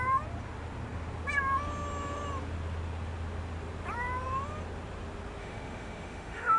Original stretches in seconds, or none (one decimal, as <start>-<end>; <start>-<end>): 0.0-5.4